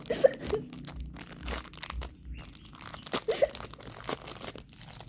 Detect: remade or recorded recorded